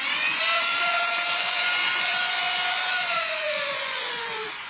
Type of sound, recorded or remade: remade